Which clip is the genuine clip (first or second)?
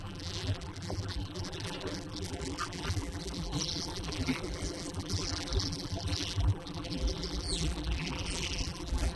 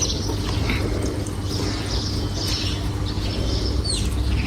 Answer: second